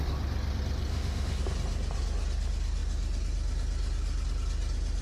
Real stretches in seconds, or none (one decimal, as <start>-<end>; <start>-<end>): 0.0-0.9; 1.4-5.0